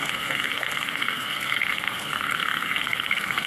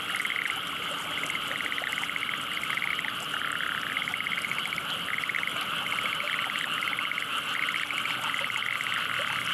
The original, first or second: second